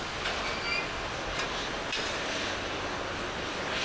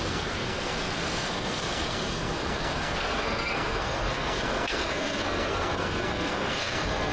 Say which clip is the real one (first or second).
first